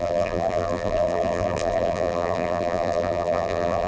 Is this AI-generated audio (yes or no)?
yes